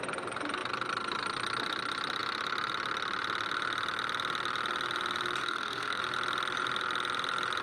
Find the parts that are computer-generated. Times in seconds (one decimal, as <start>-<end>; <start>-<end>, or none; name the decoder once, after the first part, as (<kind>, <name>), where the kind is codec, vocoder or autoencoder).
5.4-6.0 (codec, SNAC)